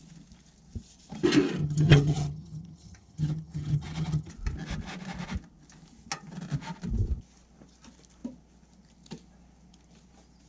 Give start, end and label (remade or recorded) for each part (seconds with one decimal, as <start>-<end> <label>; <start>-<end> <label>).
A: 0.0-1.6 recorded; 1.6-4.3 remade; 4.3-10.5 recorded